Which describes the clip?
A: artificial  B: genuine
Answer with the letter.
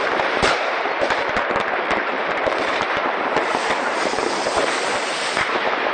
A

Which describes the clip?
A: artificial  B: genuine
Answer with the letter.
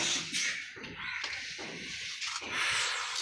B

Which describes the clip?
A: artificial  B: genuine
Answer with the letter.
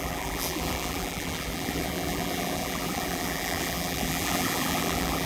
A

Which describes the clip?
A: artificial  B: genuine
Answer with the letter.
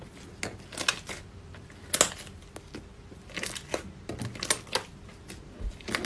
B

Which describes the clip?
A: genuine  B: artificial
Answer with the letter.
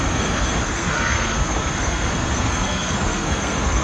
B